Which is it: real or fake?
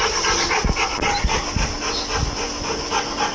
real